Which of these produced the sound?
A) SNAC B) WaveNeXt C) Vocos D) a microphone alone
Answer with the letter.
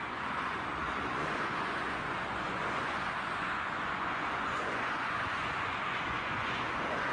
C